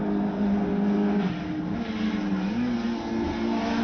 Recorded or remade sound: recorded